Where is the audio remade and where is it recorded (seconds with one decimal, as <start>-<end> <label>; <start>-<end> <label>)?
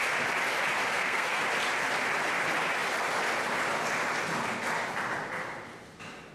0.0-0.9 recorded; 0.9-1.4 remade; 1.4-6.3 recorded